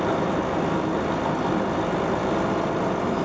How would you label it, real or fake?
real